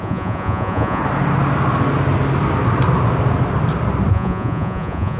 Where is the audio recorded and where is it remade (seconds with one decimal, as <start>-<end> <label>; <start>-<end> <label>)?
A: 0.0-1.0 remade; 1.0-4.1 recorded; 4.1-5.2 remade